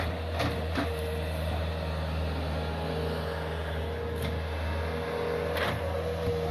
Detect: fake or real real